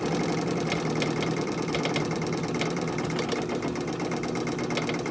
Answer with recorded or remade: remade